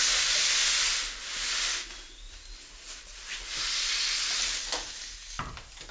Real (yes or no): yes